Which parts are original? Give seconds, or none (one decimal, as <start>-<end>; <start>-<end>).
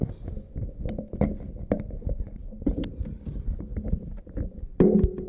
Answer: 0.0-2.4; 3.2-3.7; 4.3-5.3